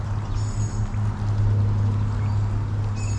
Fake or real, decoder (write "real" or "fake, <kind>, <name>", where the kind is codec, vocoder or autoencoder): real